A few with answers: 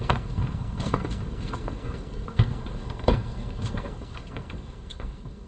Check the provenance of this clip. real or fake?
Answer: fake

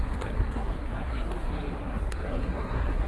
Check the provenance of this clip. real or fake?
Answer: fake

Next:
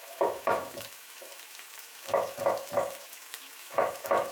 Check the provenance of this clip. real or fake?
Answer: fake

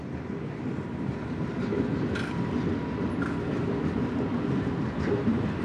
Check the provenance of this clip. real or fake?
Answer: real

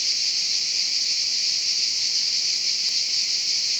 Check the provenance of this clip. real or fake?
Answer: real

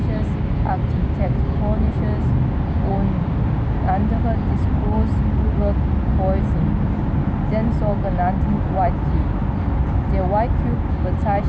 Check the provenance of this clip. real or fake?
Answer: real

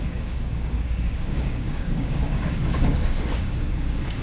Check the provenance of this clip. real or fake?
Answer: fake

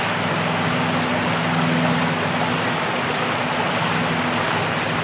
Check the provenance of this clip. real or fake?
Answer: real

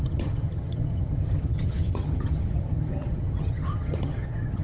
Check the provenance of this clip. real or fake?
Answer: fake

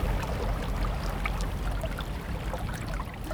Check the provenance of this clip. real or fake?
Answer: real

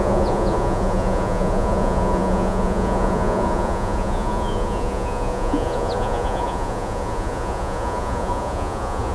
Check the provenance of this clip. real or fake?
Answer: fake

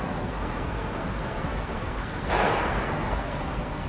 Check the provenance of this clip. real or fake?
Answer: fake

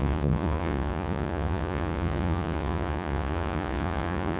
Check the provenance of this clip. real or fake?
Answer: fake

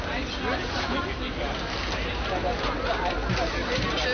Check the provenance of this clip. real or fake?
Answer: real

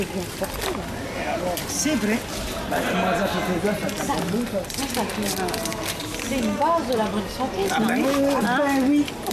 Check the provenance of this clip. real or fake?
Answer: real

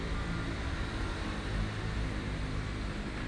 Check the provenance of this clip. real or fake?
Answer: real